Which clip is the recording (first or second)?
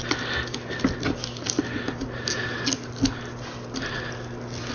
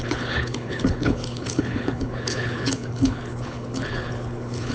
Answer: first